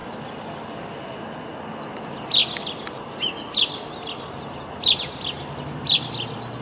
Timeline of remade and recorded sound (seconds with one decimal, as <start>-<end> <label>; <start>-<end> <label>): 0.0-6.6 recorded